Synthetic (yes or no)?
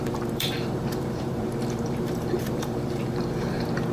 yes